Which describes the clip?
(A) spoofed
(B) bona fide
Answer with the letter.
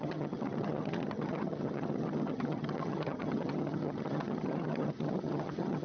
A